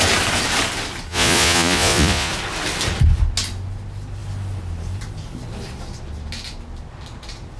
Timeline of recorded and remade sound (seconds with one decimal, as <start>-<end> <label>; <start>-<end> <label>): 0.0-1.1 recorded; 1.1-2.3 remade; 2.3-7.6 recorded